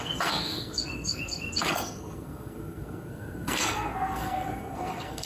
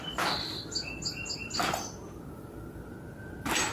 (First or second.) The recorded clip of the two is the second